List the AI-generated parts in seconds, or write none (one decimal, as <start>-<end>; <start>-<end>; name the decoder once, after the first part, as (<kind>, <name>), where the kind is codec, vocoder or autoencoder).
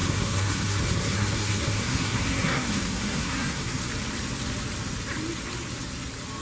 0.0-3.8 (codec, SNAC)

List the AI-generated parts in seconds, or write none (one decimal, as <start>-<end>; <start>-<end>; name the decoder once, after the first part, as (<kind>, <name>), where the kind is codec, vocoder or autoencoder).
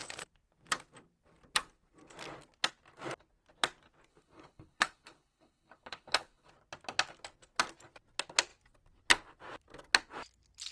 4.1-6.5 (codec, HILCodec)